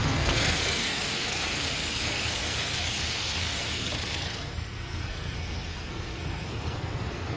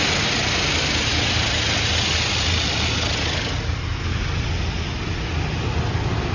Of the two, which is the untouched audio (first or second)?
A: second